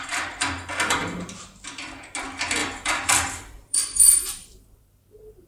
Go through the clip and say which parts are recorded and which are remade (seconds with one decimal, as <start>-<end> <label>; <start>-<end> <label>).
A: 0.0-2.6 recorded; 2.6-5.5 remade